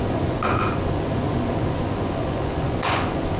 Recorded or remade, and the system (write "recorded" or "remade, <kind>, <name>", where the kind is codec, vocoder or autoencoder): remade, vocoder, Vocos